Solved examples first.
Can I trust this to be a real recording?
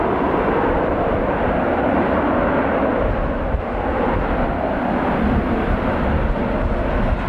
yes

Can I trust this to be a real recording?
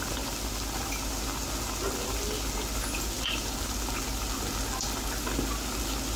yes